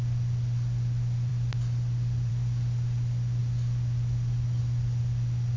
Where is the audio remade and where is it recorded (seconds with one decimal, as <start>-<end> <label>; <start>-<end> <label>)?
0.0-5.6 recorded